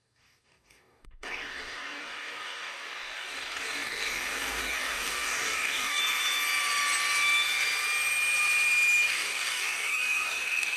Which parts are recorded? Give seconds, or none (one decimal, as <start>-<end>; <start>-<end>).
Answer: 6.0-9.1